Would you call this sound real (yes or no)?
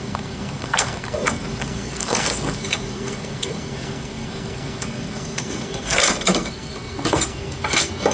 no